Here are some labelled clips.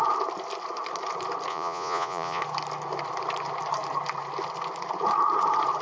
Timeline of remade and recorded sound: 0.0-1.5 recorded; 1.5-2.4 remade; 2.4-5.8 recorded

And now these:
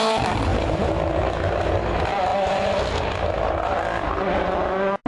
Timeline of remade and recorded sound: 0.0-5.1 recorded

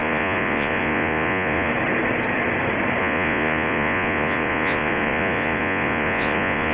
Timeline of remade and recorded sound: 0.0-1.7 remade; 1.7-3.0 recorded; 3.0-6.7 remade

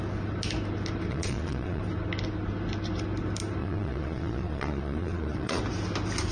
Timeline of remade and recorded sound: 0.0-1.1 recorded; 1.1-1.8 remade; 1.8-3.6 recorded; 3.6-5.6 remade; 5.6-6.3 recorded

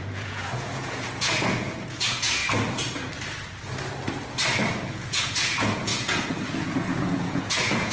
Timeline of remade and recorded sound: 0.0-2.4 remade; 2.4-4.9 recorded; 4.9-7.9 remade